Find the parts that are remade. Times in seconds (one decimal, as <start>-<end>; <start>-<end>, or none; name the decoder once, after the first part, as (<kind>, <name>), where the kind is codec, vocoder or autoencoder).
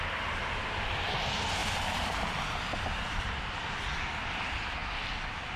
none